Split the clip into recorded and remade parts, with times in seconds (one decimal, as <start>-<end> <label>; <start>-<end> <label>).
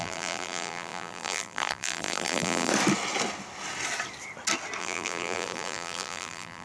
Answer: 0.0-2.7 remade; 2.7-4.8 recorded; 4.8-6.6 remade